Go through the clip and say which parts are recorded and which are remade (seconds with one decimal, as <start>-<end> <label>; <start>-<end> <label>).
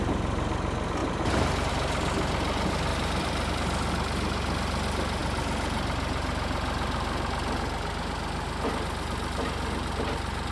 0.0-1.0 recorded; 1.0-1.7 remade; 1.7-2.9 recorded; 2.9-3.5 remade; 3.5-10.5 recorded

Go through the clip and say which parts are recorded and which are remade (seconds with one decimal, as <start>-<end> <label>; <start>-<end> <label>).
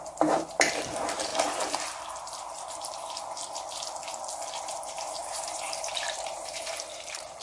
0.0-1.3 remade; 1.3-4.6 recorded; 4.6-7.4 remade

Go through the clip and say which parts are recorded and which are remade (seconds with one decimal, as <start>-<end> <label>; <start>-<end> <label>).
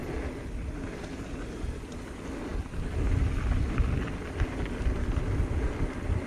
0.0-6.3 recorded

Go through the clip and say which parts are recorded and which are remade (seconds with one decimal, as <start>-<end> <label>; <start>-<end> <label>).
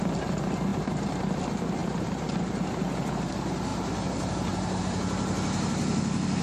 0.0-3.7 recorded; 3.7-4.8 remade; 4.8-6.4 recorded